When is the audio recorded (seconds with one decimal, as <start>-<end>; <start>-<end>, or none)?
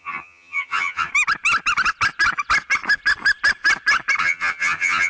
1.1-4.2